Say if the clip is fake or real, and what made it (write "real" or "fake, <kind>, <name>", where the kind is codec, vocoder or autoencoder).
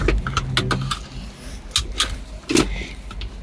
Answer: real